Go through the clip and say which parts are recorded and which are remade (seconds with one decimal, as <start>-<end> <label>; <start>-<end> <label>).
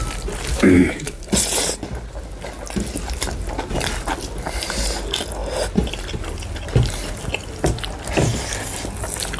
0.0-0.5 recorded; 0.5-1.2 remade; 1.2-9.4 recorded